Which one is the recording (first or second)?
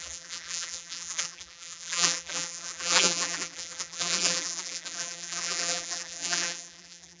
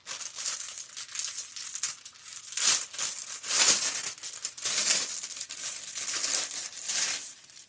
second